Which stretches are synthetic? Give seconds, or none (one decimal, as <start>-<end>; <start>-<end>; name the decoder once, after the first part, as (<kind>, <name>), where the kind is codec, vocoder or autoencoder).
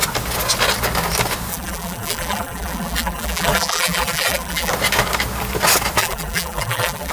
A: 1.5-4.7 (vocoder, BigVGAN v2); 6.0-7.1